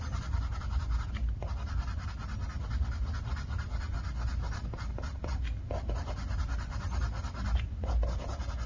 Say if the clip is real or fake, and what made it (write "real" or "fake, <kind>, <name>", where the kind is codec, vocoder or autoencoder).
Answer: real